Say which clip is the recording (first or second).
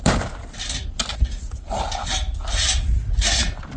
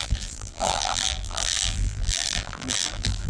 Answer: first